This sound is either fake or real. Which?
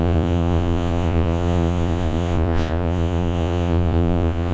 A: fake